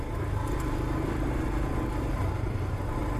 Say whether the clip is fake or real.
real